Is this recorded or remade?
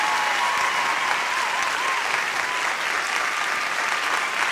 recorded